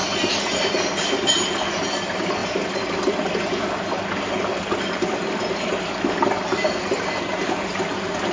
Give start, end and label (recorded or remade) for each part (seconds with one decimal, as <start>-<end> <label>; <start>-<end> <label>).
0.0-8.3 recorded